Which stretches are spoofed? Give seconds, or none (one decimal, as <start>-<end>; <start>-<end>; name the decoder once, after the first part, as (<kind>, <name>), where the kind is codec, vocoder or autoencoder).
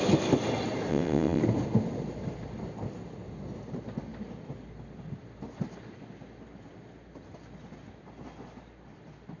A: 0.9-1.4 (vocoder, WaveNeXt)